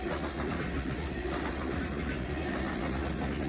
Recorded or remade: remade